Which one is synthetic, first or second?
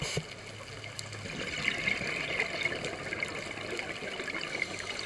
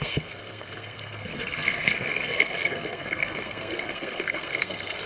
second